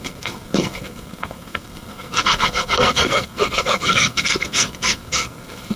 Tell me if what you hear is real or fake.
fake